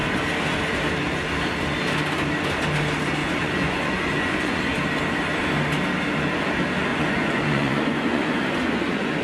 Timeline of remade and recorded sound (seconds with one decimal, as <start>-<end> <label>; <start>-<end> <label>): 0.0-3.2 recorded; 3.2-4.7 remade; 4.7-6.9 recorded; 6.9-9.2 remade